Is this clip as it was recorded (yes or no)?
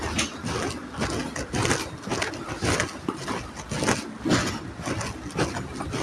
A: yes